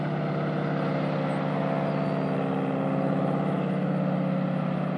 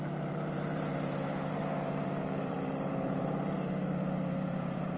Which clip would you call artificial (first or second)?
second